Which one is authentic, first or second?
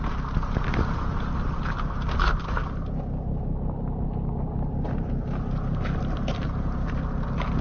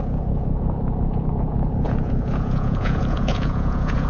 first